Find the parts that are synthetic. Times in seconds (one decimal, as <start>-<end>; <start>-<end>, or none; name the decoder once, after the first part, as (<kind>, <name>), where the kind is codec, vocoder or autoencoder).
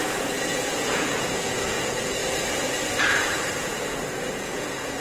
0.0-2.2 (vocoder, Vocos); 3.0-5.0